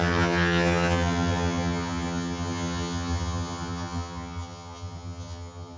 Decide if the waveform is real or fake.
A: fake